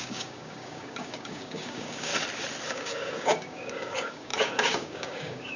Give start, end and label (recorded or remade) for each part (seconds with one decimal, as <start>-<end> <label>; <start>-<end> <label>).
0.0-2.1 remade; 2.1-2.7 recorded; 2.7-5.6 remade